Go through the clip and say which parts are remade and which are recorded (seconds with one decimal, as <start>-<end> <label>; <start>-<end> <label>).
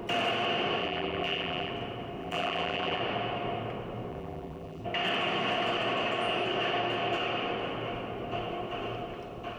0.0-0.8 recorded; 0.8-1.7 remade; 1.7-2.2 recorded; 2.2-3.0 remade; 3.0-4.1 recorded; 4.1-4.8 remade; 4.8-9.6 recorded